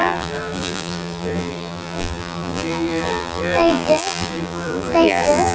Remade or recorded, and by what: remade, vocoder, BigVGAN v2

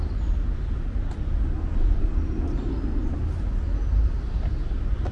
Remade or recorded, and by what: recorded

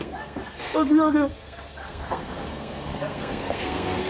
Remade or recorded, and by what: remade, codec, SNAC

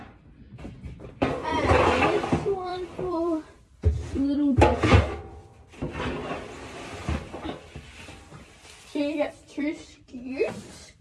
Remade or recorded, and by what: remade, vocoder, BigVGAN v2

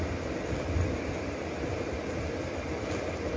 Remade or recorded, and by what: recorded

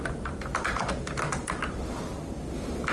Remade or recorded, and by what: remade, vocoder, BigVGAN v2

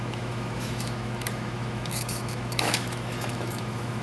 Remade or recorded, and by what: remade, autoencoder, DAC-VAE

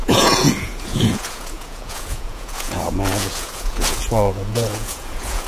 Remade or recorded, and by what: remade, vocoder, Vocos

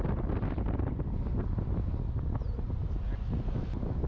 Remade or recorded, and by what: recorded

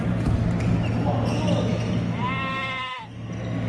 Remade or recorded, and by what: recorded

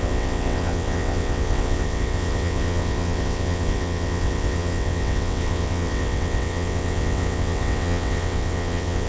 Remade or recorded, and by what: remade, vocoder, WaveNeXt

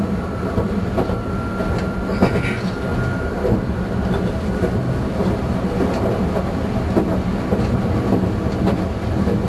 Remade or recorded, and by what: recorded